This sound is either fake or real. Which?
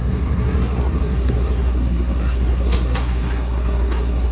fake